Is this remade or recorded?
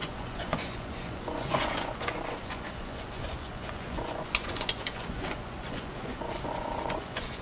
remade